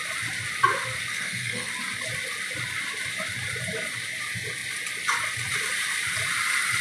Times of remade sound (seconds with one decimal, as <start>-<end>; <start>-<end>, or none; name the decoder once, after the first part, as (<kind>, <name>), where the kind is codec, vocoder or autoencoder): 1.1-1.7 (codec, SNAC)